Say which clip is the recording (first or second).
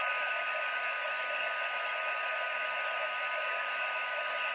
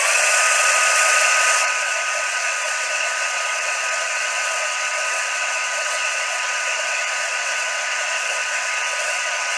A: first